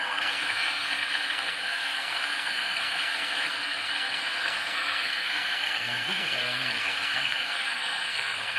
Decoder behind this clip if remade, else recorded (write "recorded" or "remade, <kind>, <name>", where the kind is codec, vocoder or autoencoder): remade, codec, SNAC